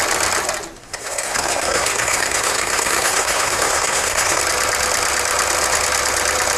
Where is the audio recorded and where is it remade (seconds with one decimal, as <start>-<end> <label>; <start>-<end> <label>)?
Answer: 0.0-0.8 recorded; 0.8-4.4 remade; 4.4-6.6 recorded